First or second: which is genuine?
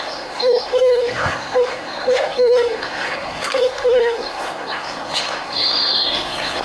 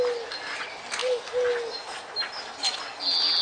second